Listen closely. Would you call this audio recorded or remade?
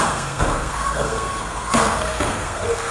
remade